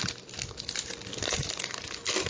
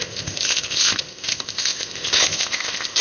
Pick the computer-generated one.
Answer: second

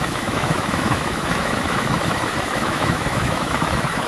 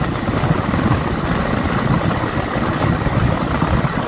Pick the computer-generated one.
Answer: first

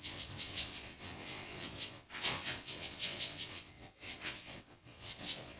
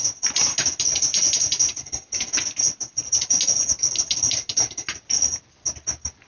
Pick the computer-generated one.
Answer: first